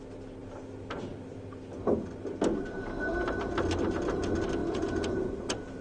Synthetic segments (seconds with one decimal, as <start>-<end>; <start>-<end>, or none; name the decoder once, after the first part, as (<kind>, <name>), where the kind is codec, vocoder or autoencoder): 4.6-5.8 (vocoder, Vocos)